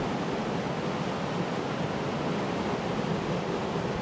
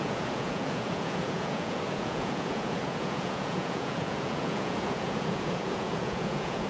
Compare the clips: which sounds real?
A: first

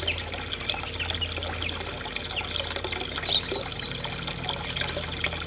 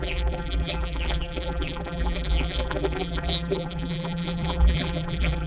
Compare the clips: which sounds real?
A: first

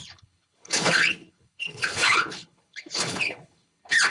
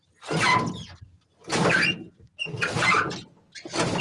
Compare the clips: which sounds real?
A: second